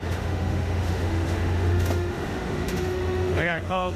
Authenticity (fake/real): fake